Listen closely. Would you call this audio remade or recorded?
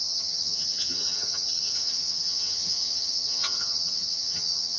remade